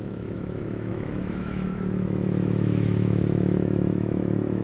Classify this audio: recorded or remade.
remade